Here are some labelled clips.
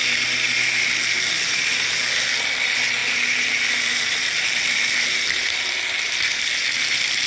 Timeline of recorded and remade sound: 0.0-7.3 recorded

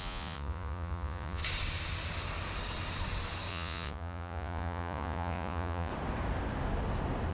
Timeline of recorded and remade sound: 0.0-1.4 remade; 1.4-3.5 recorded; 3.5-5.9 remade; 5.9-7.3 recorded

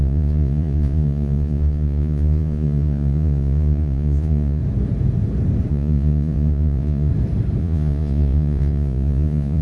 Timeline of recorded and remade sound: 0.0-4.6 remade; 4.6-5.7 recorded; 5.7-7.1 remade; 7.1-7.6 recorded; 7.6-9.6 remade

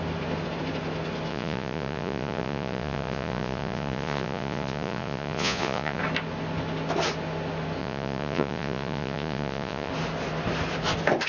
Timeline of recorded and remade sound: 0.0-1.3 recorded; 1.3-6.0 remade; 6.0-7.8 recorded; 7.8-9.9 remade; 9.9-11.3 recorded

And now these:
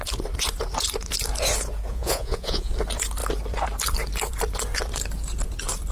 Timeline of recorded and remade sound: 0.0-1.9 recorded; 1.9-2.7 remade; 2.7-5.9 recorded

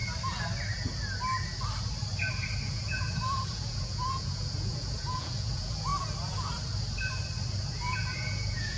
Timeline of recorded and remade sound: 0.0-2.7 recorded; 2.7-5.9 remade; 5.9-7.9 recorded; 7.9-8.8 remade